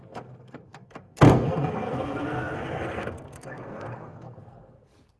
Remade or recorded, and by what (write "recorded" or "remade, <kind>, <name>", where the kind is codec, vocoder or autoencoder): remade, codec, SNAC